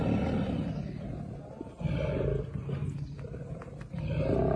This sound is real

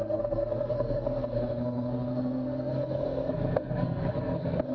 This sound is fake